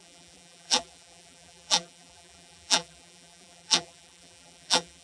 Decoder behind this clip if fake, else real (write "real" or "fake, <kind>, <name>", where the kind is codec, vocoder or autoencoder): fake, vocoder, BigVGAN v2